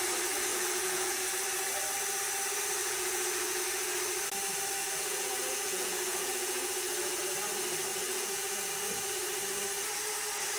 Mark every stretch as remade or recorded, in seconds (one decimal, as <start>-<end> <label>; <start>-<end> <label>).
0.0-0.5 recorded; 0.5-1.3 remade; 1.3-2.8 recorded; 2.8-3.6 remade; 3.6-4.8 recorded; 4.8-7.2 remade; 7.2-7.9 recorded; 7.9-8.7 remade; 8.7-10.6 recorded